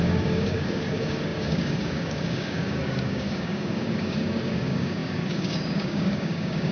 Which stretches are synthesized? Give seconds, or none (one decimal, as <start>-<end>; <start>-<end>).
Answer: 0.0-6.7